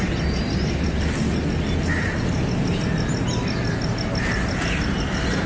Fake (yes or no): no